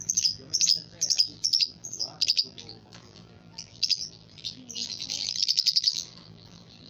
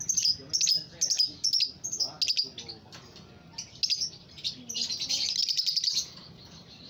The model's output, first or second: first